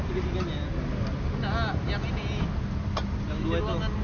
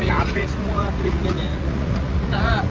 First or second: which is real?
first